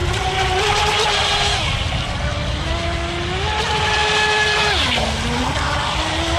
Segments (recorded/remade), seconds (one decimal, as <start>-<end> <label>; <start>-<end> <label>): 0.0-6.4 recorded